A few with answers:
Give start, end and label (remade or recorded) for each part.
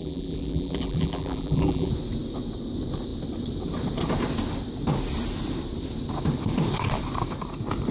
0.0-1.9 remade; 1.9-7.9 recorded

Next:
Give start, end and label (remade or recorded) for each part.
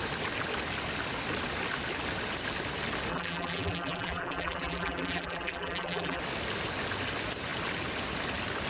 0.0-3.1 recorded; 3.1-6.2 remade; 6.2-8.7 recorded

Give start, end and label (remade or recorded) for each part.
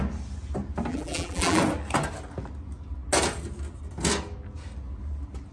0.0-0.9 recorded; 0.9-1.6 remade; 1.6-5.5 recorded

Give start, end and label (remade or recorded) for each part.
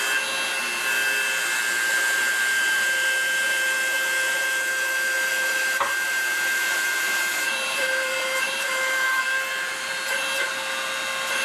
0.0-5.3 recorded; 5.3-10.0 remade; 10.0-11.4 recorded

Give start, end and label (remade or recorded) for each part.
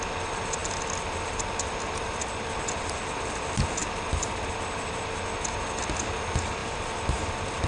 0.0-0.6 recorded; 0.6-2.9 remade; 2.9-3.8 recorded; 3.8-5.2 remade; 5.2-6.6 recorded; 6.6-7.7 remade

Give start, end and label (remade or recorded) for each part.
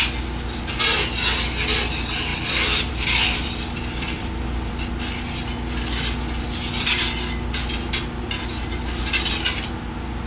0.0-2.3 recorded; 2.3-4.7 remade; 4.7-10.3 recorded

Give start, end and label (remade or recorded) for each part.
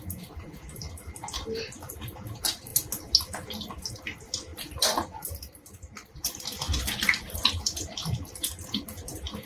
0.0-4.5 recorded; 4.5-8.3 remade; 8.3-9.5 recorded